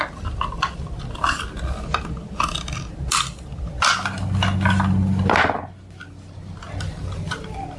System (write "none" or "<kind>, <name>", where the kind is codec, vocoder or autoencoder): none